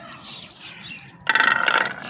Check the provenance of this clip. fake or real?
real